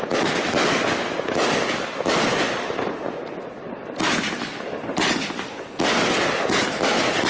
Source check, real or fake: real